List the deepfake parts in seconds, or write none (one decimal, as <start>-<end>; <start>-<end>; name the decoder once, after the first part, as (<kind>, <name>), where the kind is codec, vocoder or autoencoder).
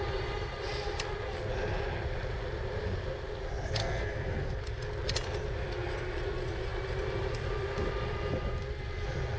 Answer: 3.8-4.6 (codec, SNAC)